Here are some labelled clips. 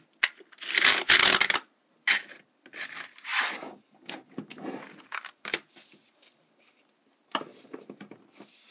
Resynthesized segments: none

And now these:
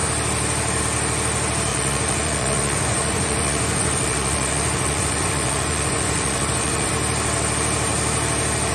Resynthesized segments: 1.7-6.9 (vocoder, Vocos)

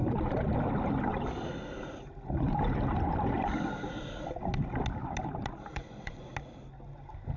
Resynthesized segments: 5.7-6.3 (vocoder, Vocos)

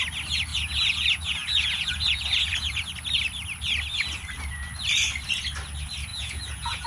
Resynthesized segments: 0.5-2.9 (vocoder, Vocos); 6.1-6.9